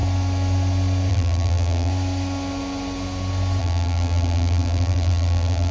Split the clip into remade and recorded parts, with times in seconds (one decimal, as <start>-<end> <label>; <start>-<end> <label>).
0.0-1.1 recorded; 1.1-1.9 remade; 1.9-3.6 recorded; 3.6-5.7 remade